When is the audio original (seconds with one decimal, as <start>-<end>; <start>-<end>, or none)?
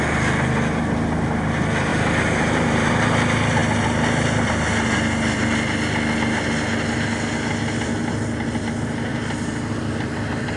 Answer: 0.0-1.9; 2.9-10.6